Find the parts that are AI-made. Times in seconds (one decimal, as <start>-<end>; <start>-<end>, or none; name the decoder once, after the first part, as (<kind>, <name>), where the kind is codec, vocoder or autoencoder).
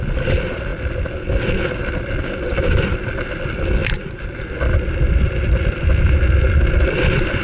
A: 3.8-5.8 (vocoder, BigVGAN v2)